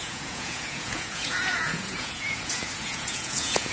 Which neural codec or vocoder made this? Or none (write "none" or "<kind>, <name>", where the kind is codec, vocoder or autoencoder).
vocoder, Vocos